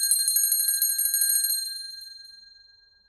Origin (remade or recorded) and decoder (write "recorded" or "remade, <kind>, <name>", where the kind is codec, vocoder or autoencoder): recorded